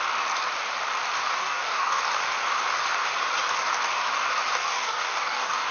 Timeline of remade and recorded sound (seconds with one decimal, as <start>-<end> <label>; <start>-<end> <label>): 0.0-1.4 recorded; 1.4-2.0 remade; 2.0-4.6 recorded; 4.6-5.7 remade